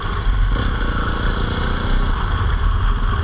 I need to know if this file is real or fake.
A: real